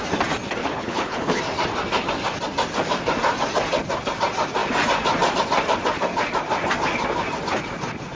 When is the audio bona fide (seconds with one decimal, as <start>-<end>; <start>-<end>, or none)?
0.0-0.6; 1.4-8.1